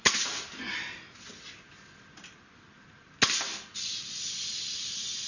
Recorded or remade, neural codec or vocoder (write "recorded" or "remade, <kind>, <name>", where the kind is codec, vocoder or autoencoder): recorded